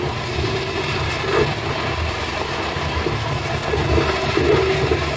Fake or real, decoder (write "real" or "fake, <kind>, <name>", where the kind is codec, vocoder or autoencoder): real